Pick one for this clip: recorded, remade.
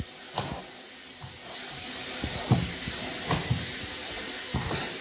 recorded